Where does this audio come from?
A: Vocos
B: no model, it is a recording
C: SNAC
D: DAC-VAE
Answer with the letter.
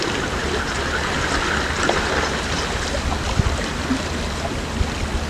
B